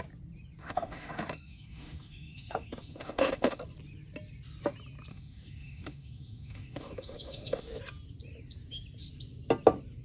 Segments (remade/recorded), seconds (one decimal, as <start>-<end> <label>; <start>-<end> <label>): 0.0-0.6 recorded; 0.6-3.6 remade; 3.6-5.1 recorded; 5.1-7.8 remade; 7.8-10.0 recorded